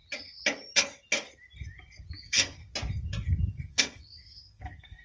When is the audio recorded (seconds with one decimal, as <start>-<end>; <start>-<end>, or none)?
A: 0.0-2.2; 2.6-3.7